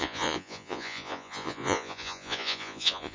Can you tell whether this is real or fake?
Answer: fake